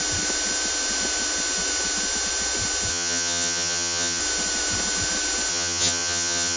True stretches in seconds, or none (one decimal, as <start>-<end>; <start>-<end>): 0.0-2.9; 4.2-5.5